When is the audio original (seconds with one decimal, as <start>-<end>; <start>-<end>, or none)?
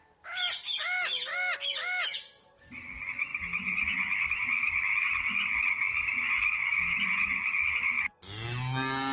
0.0-9.1